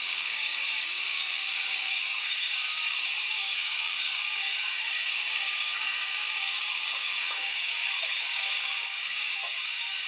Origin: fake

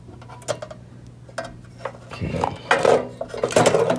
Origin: real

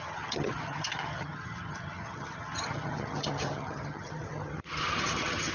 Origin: fake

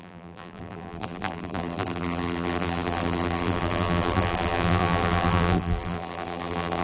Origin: fake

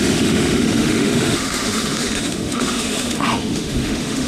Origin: fake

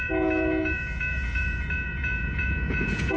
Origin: fake